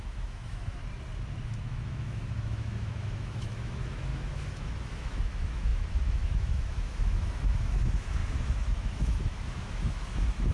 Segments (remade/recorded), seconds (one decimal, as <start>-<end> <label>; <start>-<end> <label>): 0.0-0.8 remade; 0.8-1.6 recorded; 1.6-10.5 remade